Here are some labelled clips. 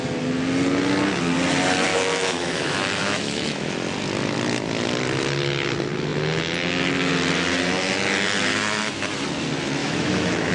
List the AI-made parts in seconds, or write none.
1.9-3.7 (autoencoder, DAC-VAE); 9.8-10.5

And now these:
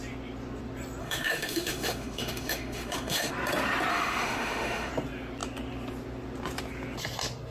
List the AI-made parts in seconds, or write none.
1.0-3.3 (autoencoder, DAC-VAE); 3.9-4.9

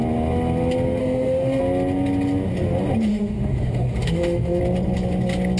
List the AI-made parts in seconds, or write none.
1.0-1.6 (autoencoder, DAC-VAE); 3.1-4.6

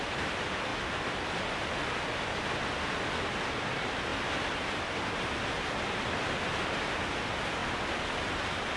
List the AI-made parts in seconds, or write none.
none

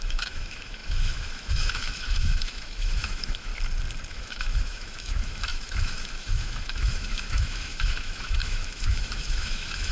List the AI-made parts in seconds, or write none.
0.0-3.5 (autoencoder, DAC-VAE); 4.1-9.9

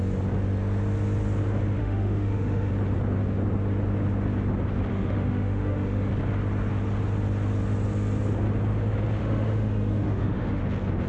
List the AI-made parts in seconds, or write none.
1.8-2.7 (autoencoder, DAC-VAE); 4.9-6.1; 9.2-10.6